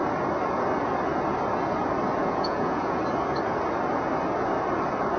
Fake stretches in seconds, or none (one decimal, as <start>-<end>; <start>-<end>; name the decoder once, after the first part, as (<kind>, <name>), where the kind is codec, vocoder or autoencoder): 2.2-3.0 (vocoder, Vocos)